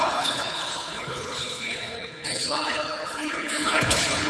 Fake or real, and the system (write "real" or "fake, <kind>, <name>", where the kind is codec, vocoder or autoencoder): fake, codec, HILCodec